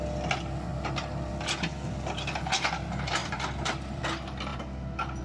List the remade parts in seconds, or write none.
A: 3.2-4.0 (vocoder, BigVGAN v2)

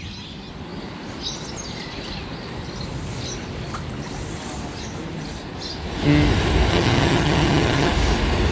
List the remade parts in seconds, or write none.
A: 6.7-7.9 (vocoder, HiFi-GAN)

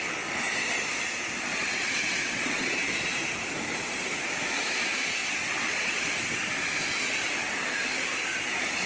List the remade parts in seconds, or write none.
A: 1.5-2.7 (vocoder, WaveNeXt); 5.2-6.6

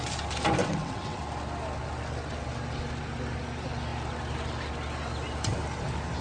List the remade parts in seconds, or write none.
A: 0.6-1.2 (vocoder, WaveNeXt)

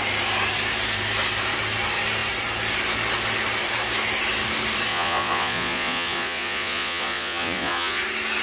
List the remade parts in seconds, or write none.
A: 4.9-8.0 (vocoder, Vocos)

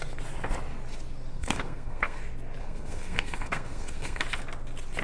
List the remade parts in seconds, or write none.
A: 1.3-2.2 (codec, SNAC); 2.6-4.2

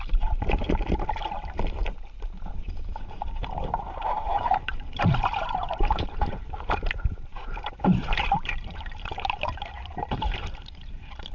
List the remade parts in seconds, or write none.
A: 0.0-1.8 (vocoder, BigVGAN v2); 3.0-11.3